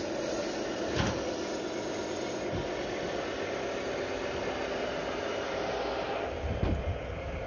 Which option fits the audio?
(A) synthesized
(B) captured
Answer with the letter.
B